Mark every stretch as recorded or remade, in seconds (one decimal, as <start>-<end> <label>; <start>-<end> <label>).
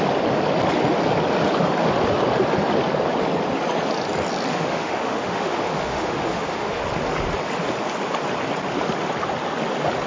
0.0-4.5 recorded; 4.5-6.8 remade; 6.8-10.1 recorded